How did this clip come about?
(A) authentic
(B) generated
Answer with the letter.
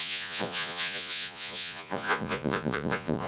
B